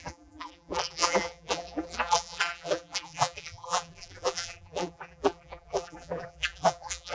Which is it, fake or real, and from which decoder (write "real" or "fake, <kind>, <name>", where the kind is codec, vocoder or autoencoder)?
fake, vocoder, BigVGAN v2